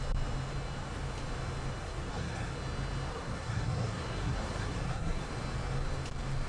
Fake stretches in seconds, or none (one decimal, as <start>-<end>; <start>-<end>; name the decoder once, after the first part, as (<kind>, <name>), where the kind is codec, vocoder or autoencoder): 1.8-2.5 (codec, SNAC); 3.1-5.3